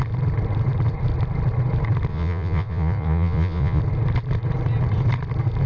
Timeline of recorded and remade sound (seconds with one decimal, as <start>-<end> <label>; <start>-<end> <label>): 0.0-2.1 recorded; 2.1-3.8 remade; 3.8-5.7 recorded